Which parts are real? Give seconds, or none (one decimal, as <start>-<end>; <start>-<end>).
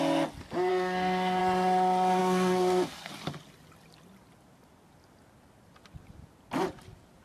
0.0-0.7; 1.4-2.2; 3.1-7.2